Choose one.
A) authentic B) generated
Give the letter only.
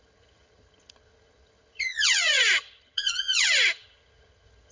B